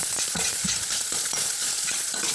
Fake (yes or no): yes